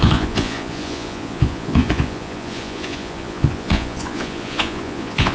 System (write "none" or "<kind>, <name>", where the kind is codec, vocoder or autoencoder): vocoder, Vocos